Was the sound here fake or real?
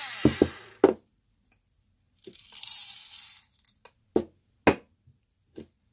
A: real